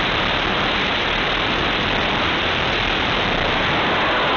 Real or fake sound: real